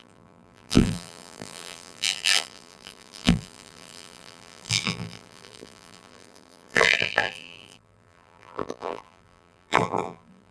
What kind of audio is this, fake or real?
fake